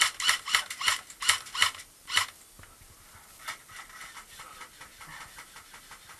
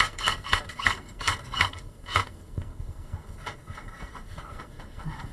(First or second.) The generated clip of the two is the second